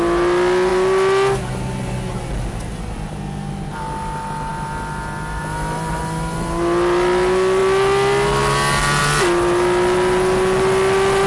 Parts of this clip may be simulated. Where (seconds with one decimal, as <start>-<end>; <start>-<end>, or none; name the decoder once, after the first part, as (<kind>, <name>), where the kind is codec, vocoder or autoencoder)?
none